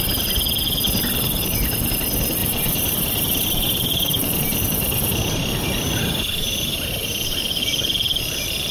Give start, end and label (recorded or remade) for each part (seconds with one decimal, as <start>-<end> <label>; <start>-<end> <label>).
0.0-2.4 recorded; 2.4-7.4 remade; 7.4-8.7 recorded